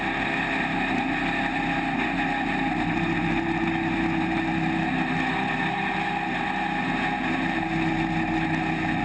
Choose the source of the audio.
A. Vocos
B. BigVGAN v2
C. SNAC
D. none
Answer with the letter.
D